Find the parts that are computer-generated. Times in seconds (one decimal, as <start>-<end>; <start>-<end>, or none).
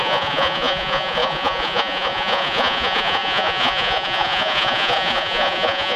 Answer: 0.0-6.0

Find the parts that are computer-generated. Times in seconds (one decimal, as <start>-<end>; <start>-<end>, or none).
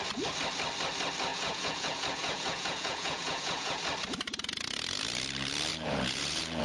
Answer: 1.3-3.8; 5.7-6.6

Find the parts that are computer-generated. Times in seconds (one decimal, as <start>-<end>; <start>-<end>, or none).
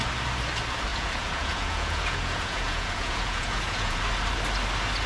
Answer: 0.9-4.0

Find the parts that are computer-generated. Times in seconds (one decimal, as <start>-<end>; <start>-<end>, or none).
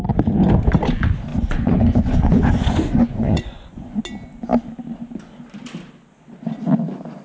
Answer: 1.3-4.0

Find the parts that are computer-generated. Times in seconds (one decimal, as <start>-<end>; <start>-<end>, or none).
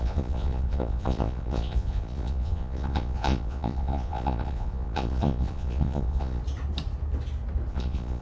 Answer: 0.0-6.4; 7.7-8.2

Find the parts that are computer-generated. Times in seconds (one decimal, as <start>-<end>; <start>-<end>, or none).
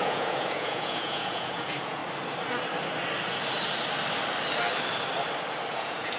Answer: 0.0-2.0; 5.7-6.2